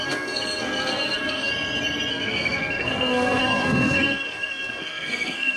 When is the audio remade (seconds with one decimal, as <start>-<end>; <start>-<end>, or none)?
0.0-1.5; 2.1-5.6